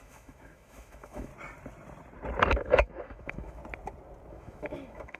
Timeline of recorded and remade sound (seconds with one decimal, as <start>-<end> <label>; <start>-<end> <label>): 0.0-1.3 remade; 1.3-2.5 recorded; 2.5-3.6 remade; 3.6-4.3 recorded; 4.3-5.2 remade